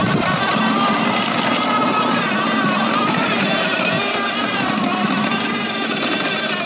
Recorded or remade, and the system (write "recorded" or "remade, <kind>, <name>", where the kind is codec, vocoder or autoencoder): recorded